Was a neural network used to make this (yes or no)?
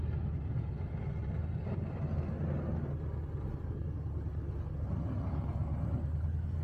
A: no